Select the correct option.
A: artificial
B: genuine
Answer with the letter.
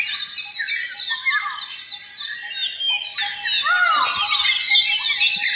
B